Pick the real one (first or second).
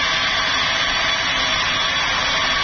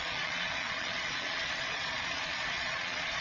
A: first